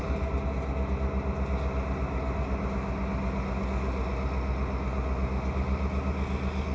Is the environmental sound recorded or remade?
recorded